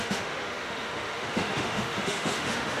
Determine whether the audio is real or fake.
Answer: fake